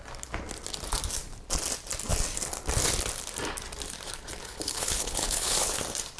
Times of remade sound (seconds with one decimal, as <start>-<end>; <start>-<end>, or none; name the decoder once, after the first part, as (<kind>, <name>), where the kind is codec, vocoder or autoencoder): 4.4-5.8 (codec, HILCodec)